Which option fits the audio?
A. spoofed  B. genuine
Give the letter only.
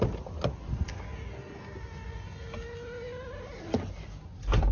B